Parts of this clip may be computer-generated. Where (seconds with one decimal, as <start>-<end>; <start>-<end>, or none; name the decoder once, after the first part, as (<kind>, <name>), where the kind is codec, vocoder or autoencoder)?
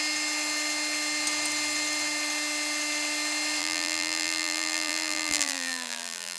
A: 3.6-6.4 (vocoder, BigVGAN v2)